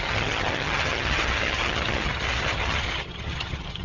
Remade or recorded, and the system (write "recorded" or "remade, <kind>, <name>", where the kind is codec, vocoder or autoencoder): remade, vocoder, HiFi-GAN